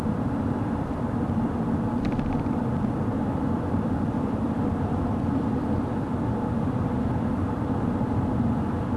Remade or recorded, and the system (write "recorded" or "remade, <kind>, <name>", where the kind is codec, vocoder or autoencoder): remade, vocoder, BigVGAN v2